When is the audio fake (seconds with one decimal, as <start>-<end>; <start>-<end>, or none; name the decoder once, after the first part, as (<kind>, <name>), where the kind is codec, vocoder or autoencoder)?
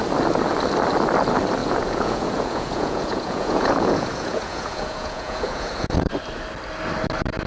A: 1.6-6.1 (vocoder, Vocos)